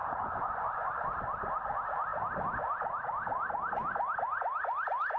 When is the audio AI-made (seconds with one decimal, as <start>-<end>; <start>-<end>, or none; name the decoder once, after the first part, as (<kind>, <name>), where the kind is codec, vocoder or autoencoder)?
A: 0.0-0.9 (vocoder, Vocos)